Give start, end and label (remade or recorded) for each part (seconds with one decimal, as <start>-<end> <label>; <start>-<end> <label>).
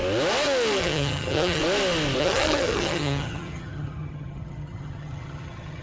0.0-0.8 recorded; 0.8-1.6 remade; 1.6-2.2 recorded; 2.2-5.8 remade